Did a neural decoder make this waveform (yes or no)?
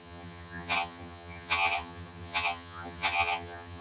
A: yes